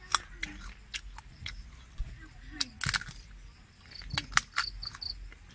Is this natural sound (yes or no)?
yes